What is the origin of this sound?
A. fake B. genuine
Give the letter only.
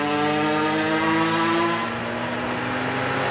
B